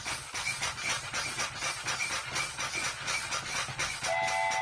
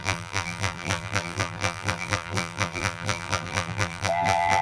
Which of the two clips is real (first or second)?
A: first